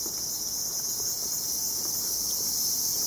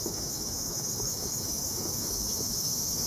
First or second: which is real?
first